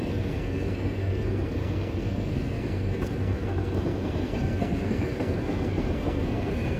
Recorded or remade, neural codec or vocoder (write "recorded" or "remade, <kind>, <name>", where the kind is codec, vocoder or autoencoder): remade, codec, SNAC